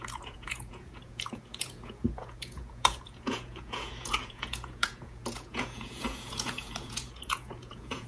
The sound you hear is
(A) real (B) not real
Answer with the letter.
B